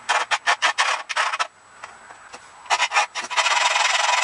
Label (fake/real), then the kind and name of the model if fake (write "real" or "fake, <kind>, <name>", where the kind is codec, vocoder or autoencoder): real